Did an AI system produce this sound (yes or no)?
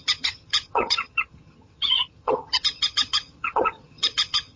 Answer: yes